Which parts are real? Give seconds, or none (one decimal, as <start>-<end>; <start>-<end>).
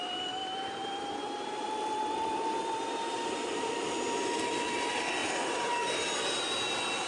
0.0-0.4; 3.9-5.2; 5.8-7.1